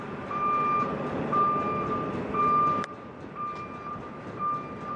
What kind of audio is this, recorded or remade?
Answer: recorded